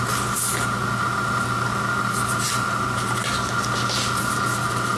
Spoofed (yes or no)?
no